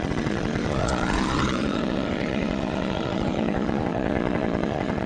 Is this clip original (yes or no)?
no